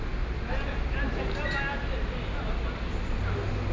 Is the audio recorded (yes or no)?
yes